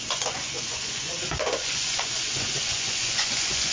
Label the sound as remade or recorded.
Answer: remade